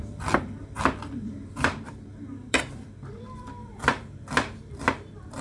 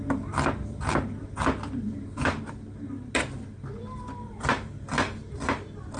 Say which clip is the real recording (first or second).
second